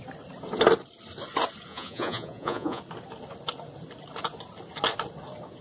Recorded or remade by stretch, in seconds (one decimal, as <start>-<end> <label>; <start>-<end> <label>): 0.0-1.7 recorded; 1.7-2.8 remade; 2.8-5.6 recorded